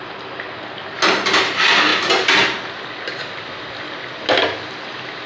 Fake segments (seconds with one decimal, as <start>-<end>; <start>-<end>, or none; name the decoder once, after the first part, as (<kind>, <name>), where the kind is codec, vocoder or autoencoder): none